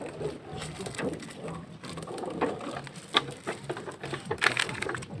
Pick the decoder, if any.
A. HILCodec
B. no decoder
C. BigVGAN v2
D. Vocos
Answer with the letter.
B